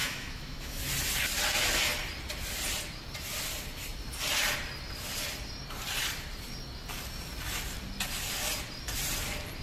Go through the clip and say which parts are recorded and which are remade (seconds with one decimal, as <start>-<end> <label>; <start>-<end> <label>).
0.0-0.8 remade; 0.8-9.6 recorded